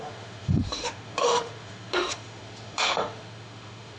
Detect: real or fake fake